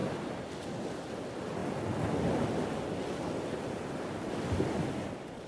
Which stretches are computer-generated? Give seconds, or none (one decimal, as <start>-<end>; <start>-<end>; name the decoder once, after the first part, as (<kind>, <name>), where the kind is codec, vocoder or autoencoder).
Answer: none

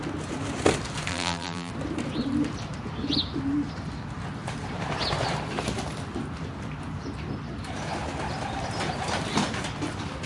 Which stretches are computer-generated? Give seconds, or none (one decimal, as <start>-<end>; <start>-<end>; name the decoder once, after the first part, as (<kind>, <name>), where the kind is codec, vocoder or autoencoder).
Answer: 1.1-1.7 (vocoder, BigVGAN v2)

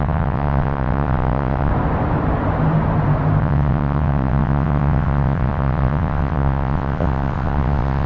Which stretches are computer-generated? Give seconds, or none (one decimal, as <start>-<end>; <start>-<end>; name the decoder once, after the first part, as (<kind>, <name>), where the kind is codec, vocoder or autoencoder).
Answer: 0.0-1.7 (vocoder, WaveNeXt); 3.4-8.1

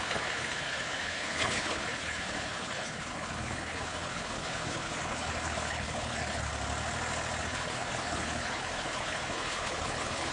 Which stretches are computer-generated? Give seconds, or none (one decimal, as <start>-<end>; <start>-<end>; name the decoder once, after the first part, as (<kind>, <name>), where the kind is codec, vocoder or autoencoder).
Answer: 0.0-6.5 (codec, HILCodec); 7.4-10.3

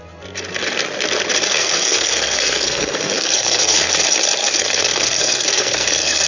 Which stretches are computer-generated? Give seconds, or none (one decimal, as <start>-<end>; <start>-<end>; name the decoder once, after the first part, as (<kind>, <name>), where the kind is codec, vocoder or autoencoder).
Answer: 1.5-3.9 (codec, SNAC); 4.4-6.3